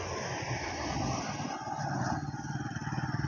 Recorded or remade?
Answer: recorded